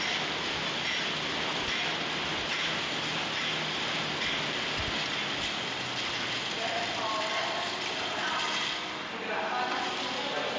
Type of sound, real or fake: real